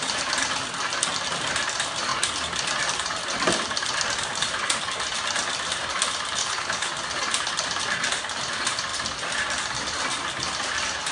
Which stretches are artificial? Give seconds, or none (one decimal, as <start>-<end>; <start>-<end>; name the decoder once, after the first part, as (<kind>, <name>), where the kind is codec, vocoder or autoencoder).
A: 6.4-6.9 (codec, HILCodec)